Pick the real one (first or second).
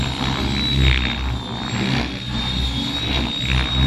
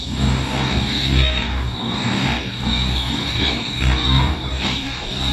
first